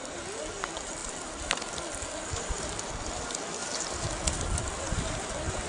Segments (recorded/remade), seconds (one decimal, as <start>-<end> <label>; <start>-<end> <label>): 0.0-1.0 recorded; 1.0-1.7 remade; 1.7-3.6 recorded; 3.6-5.7 remade